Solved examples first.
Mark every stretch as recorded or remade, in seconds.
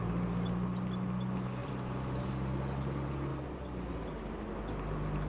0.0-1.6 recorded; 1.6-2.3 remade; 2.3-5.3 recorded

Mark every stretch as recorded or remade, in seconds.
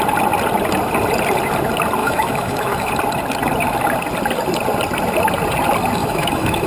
0.0-2.0 recorded; 2.0-2.9 remade; 2.9-6.0 recorded; 6.0-6.7 remade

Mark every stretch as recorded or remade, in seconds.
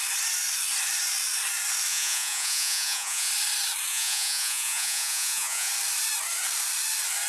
0.0-1.9 recorded; 1.9-3.3 remade; 3.3-3.9 recorded; 3.9-5.7 remade; 5.7-7.3 recorded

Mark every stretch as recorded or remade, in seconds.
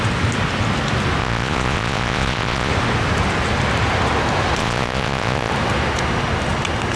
0.0-1.2 recorded; 1.2-2.7 remade; 2.7-4.6 recorded; 4.6-5.5 remade; 5.5-7.0 recorded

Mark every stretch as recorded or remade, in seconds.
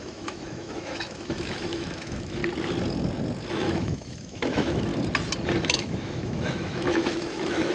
0.0-2.4 remade; 2.4-3.5 recorded; 3.5-4.9 remade; 4.9-5.6 recorded; 5.6-7.7 remade